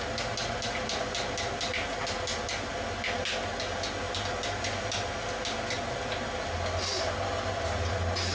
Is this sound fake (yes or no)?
no